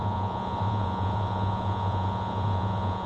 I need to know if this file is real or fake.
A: fake